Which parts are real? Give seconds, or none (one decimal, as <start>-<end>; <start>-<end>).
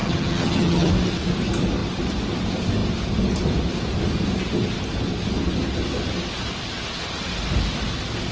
0.9-8.3